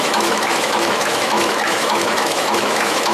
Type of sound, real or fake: fake